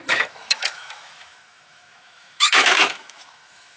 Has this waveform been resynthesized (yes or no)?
yes